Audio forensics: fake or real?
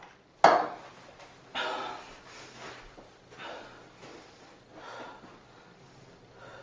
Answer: real